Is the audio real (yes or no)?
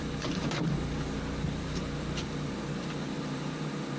no